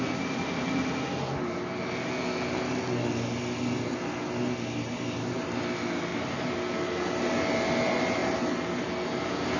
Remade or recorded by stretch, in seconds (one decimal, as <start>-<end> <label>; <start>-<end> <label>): 0.0-9.6 recorded

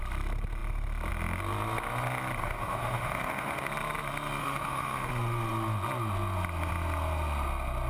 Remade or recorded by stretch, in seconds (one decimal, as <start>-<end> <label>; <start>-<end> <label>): 0.0-2.4 recorded; 2.4-3.7 remade; 3.7-4.4 recorded; 4.4-5.1 remade; 5.1-7.9 recorded

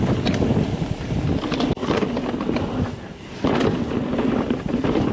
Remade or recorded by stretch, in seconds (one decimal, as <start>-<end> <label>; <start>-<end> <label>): 0.0-5.1 recorded

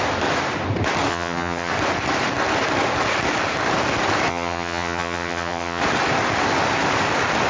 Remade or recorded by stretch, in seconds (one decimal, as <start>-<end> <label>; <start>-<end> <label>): 0.0-1.1 recorded; 1.1-1.7 remade; 1.7-4.3 recorded; 4.3-5.8 remade; 5.8-7.5 recorded

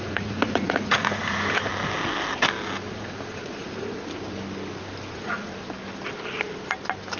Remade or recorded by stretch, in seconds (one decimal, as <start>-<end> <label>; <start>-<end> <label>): 0.0-1.7 remade; 1.7-2.9 recorded; 2.9-3.9 remade; 3.9-5.1 recorded; 5.1-5.5 remade; 5.5-7.2 recorded

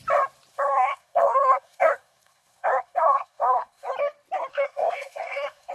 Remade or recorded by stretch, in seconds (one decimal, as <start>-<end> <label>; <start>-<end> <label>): 0.0-0.5 recorded; 0.5-3.9 remade; 3.9-4.5 recorded; 4.5-5.7 remade

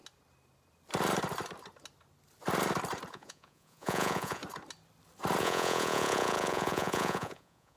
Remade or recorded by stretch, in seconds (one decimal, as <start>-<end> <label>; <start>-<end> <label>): 0.0-3.1 recorded; 3.1-4.4 remade; 4.4-5.4 recorded; 5.4-7.8 remade